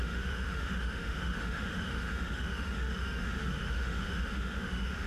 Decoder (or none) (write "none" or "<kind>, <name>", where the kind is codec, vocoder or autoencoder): autoencoder, DAC-VAE